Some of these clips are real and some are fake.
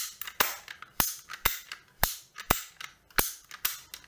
real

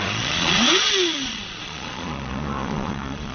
fake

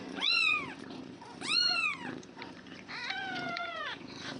fake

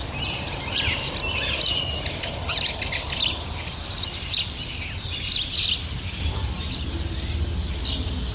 real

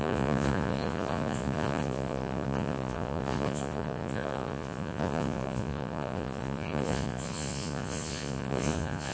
fake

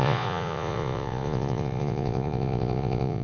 fake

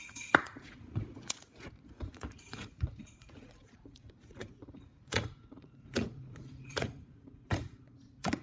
fake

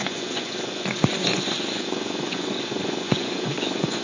fake